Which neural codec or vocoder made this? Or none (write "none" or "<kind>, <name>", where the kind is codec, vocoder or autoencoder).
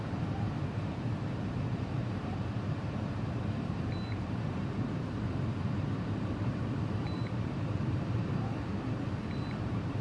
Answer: vocoder, BigVGAN v2